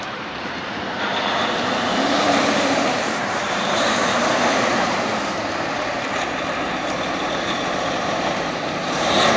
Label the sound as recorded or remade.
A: remade